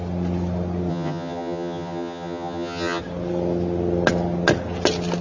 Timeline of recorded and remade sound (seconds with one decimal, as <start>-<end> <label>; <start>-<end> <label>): 0.0-0.9 recorded; 0.9-3.0 remade; 3.0-5.2 recorded